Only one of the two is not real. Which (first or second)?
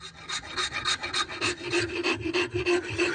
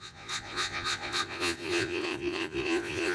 second